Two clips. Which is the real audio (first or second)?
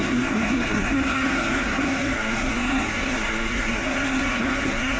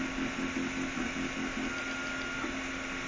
second